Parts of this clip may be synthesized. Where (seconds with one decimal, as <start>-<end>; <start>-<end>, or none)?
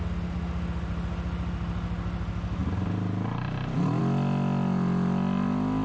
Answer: none